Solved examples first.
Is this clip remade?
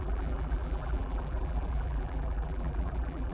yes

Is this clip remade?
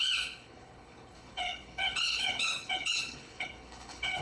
yes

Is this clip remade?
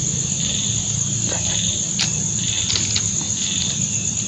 no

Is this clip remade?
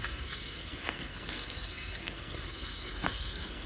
yes